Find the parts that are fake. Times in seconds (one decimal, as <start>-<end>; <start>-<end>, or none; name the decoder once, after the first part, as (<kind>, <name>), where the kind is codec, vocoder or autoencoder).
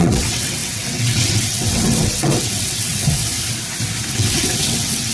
0.0-3.2 (vocoder, WaveNeXt); 4.1-5.1